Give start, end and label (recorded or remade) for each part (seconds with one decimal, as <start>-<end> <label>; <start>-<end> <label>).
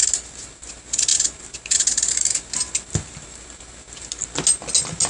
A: 0.0-5.1 recorded